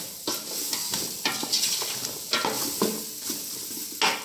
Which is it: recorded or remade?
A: recorded